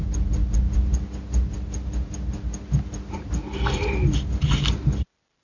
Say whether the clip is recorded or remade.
recorded